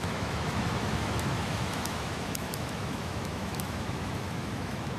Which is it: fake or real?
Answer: fake